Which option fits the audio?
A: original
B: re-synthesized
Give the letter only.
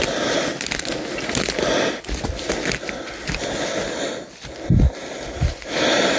A